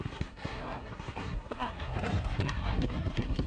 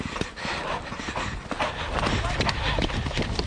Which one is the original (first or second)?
second